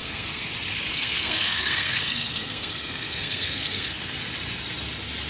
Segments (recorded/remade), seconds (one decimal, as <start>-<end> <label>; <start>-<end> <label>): 0.0-0.5 remade; 0.5-0.9 recorded; 0.9-4.1 remade; 4.1-5.3 recorded